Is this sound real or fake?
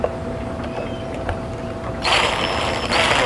fake